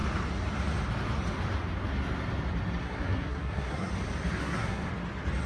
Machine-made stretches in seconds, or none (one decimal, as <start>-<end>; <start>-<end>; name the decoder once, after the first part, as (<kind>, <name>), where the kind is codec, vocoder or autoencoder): 2.8-3.9 (codec, SNAC); 4.4-4.9